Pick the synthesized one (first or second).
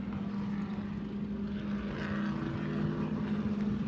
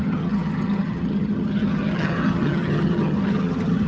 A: second